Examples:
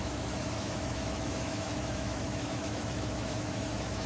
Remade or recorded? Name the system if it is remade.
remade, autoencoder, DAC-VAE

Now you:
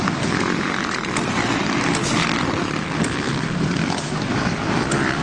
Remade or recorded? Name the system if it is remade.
recorded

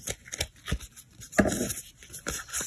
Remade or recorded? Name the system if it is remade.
recorded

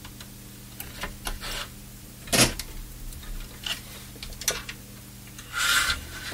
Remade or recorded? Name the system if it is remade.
recorded